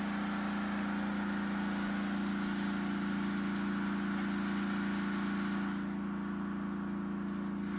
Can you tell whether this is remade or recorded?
recorded